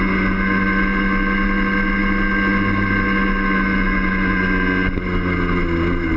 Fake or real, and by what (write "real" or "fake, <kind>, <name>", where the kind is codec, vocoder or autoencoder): real